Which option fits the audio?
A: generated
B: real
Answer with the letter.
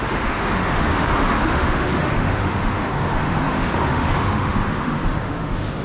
A